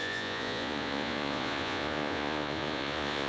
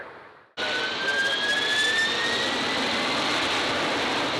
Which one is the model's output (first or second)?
first